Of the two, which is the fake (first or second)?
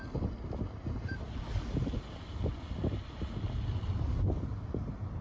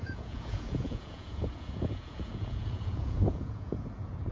second